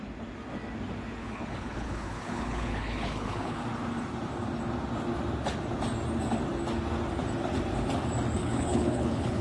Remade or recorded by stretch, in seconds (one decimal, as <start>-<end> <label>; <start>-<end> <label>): 0.0-1.2 recorded; 1.2-3.6 remade; 3.6-8.4 recorded; 8.4-9.4 remade